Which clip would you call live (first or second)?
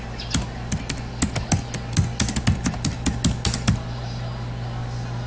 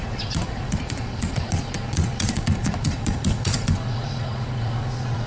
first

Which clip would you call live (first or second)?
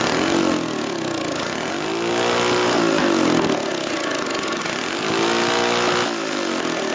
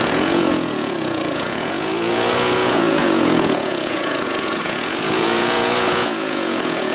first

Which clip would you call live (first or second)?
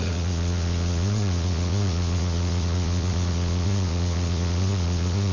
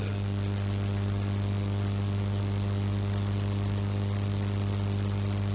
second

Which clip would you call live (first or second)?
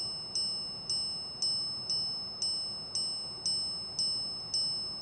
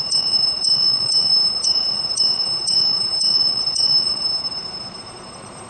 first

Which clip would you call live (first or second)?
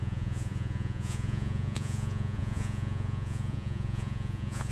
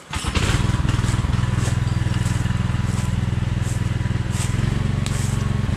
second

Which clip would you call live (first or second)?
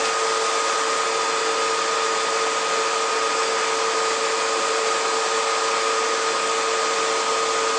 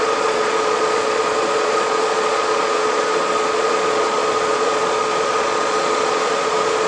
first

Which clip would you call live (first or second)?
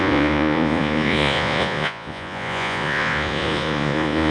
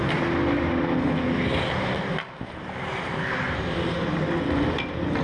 second